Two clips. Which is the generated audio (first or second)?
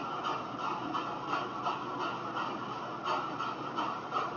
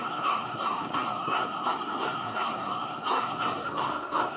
second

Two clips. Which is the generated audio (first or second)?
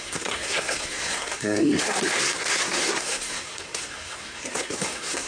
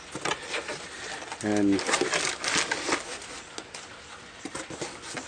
first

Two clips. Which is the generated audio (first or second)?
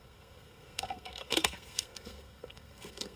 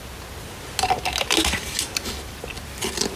first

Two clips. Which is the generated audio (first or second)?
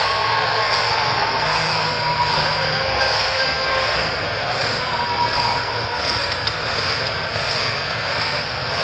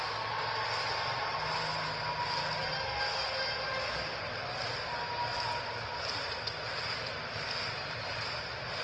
first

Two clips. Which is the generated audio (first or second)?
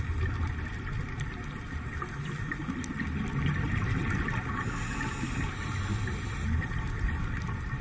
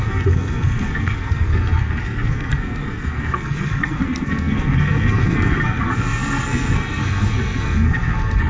second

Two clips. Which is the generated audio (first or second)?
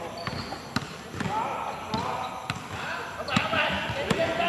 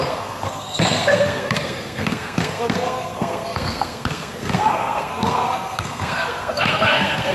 second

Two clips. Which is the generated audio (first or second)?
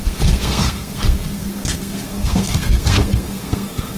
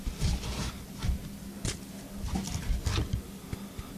first